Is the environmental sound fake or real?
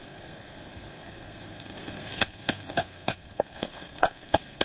fake